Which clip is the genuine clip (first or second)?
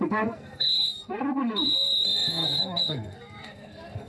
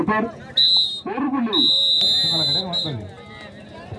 second